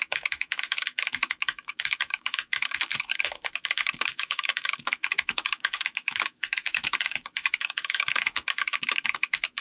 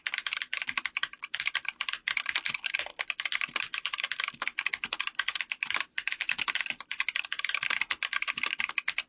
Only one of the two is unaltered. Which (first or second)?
second